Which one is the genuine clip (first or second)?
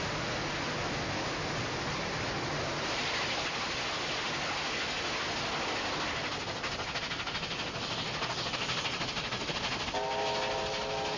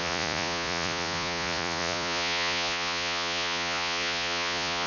first